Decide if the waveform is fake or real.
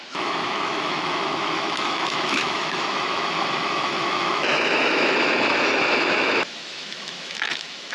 fake